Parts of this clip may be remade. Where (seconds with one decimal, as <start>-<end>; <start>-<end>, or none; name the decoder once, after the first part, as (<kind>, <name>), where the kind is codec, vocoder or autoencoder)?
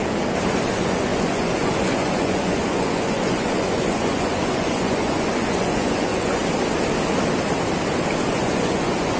0.7-6.4 (vocoder, Vocos); 8.3-9.2